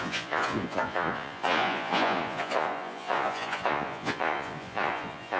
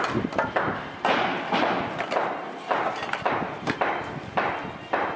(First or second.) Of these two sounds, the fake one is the first